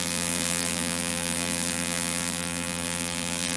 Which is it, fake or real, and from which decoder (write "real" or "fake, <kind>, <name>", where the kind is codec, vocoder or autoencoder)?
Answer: fake, vocoder, BigVGAN v2